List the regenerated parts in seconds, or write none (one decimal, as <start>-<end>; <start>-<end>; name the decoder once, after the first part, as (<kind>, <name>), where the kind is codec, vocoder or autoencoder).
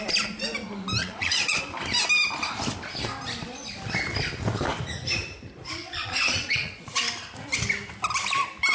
1.0-1.6 (vocoder, Vocos); 5.8-7.0